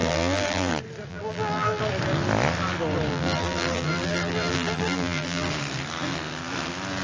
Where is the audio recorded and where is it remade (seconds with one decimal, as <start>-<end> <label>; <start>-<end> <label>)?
0.0-0.7 remade; 0.7-1.1 recorded; 1.1-1.8 remade; 1.8-3.1 recorded; 3.1-5.5 remade; 5.5-7.0 recorded